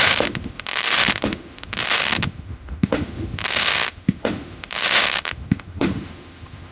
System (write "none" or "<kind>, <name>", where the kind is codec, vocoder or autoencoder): autoencoder, DAC-VAE